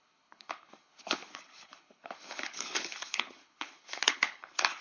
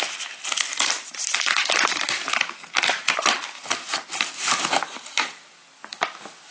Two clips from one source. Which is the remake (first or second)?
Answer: first